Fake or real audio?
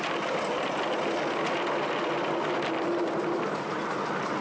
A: real